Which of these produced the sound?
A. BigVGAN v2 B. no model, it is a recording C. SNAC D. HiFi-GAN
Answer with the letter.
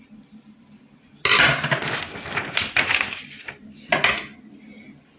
B